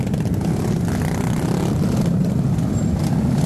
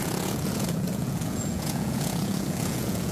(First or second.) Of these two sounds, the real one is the first